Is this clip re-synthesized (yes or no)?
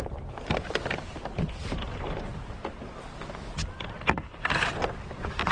no